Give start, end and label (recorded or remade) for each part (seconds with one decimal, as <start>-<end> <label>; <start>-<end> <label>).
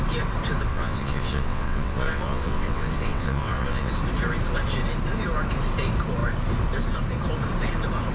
0.0-0.7 recorded; 0.7-3.9 remade; 3.9-8.1 recorded